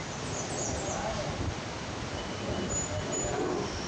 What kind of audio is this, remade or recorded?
recorded